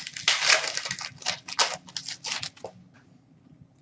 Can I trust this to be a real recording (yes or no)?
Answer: yes